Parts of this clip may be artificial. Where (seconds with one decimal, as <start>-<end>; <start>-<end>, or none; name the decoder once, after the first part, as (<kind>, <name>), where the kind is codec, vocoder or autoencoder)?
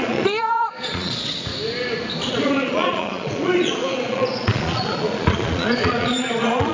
0.0-1.5 (vocoder, Vocos); 2.3-6.7